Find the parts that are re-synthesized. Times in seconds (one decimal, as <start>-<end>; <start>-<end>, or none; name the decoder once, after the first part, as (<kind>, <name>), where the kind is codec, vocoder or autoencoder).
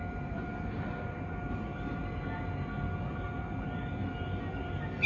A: none